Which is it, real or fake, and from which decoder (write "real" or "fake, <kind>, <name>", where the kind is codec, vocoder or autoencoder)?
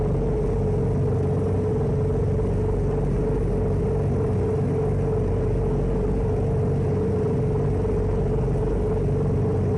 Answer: real